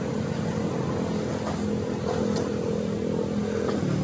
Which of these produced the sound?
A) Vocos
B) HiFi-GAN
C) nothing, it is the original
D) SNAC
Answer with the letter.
C